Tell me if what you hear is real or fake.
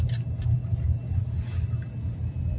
real